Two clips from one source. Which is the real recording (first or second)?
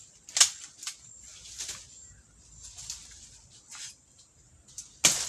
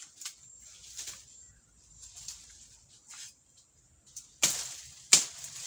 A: first